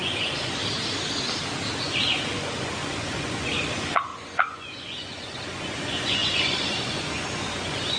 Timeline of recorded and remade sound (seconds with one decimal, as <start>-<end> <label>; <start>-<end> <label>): 0.0-0.6 remade; 0.6-1.8 recorded; 1.8-8.0 remade